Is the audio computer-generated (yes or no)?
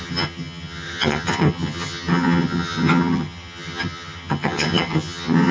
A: yes